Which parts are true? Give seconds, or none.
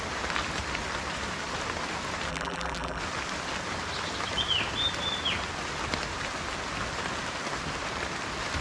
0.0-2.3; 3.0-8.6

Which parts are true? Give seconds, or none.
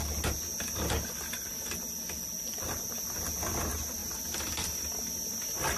0.0-5.8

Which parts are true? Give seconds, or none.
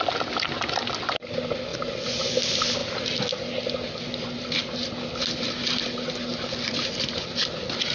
0.0-7.9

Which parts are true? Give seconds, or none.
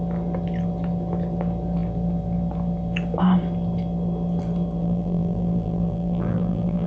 0.0-4.8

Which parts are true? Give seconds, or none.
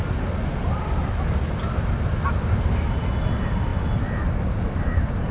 0.0-3.2; 3.7-4.3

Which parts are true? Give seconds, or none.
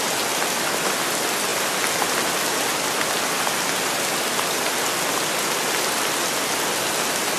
0.0-7.4